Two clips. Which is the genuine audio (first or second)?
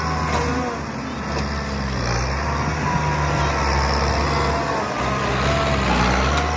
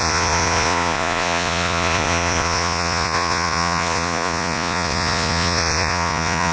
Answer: first